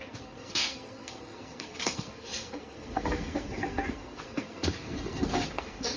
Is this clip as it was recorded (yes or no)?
no